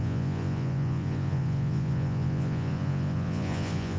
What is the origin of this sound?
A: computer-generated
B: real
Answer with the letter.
A